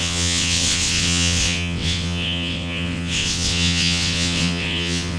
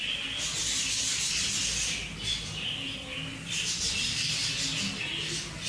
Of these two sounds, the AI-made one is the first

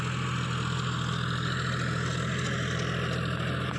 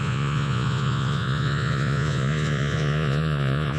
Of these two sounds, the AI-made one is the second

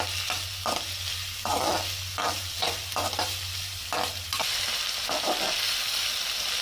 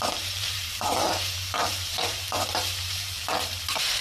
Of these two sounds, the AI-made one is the second